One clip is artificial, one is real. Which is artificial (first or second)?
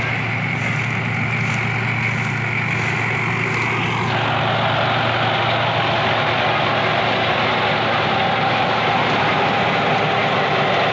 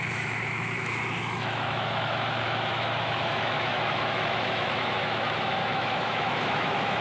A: second